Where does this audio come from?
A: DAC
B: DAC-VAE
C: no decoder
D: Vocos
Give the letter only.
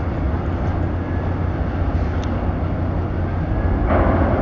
C